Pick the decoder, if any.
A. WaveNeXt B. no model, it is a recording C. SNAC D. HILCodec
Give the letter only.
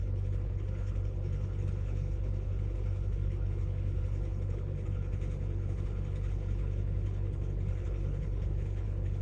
D